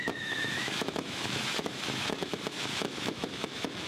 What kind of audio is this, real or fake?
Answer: fake